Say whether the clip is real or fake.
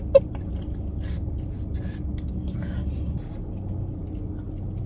real